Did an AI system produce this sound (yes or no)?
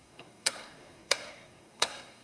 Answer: yes